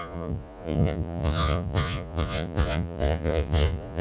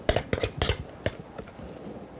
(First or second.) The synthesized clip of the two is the first